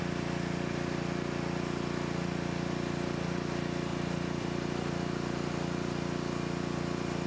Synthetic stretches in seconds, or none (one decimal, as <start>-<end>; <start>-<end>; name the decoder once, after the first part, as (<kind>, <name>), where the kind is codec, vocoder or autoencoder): 3.9-5.5 (vocoder, BigVGAN v2)